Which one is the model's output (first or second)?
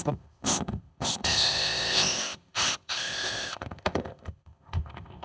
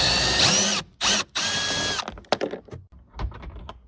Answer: first